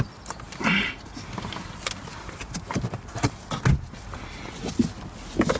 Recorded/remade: recorded